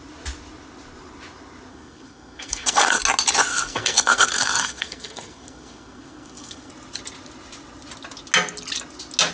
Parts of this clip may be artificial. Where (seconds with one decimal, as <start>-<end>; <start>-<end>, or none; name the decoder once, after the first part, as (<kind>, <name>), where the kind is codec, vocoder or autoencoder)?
1.7-3.0 (codec, SNAC); 3.5-6.7